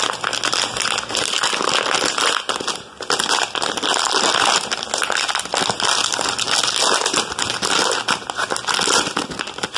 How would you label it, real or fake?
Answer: real